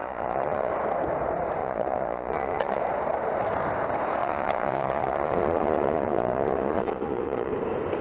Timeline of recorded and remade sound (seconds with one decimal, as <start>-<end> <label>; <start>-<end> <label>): 0.0-0.7 remade; 0.7-1.6 recorded; 1.6-2.8 remade; 2.8-4.2 recorded; 4.2-7.5 remade; 7.5-8.0 recorded

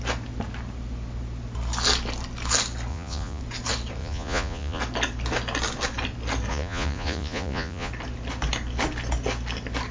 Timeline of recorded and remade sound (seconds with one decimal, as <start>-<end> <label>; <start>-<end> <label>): 0.0-2.9 recorded; 2.9-3.4 remade; 3.4-4.0 recorded; 4.0-4.8 remade; 4.8-6.5 recorded; 6.5-7.9 remade; 7.9-9.9 recorded

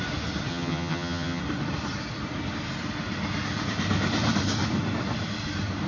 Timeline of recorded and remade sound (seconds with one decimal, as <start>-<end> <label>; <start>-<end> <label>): 0.0-0.5 recorded; 0.5-1.4 remade; 1.4-5.9 recorded

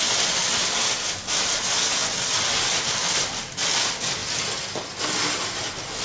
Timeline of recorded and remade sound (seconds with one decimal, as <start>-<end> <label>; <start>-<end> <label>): 0.0-6.0 recorded

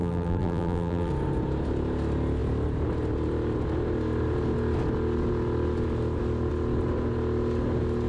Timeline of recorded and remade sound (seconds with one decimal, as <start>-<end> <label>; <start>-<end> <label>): 0.0-1.1 remade; 1.1-8.1 recorded

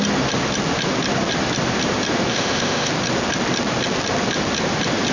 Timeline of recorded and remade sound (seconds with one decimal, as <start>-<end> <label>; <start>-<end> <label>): 0.0-2.3 recorded; 2.3-2.9 remade; 2.9-5.1 recorded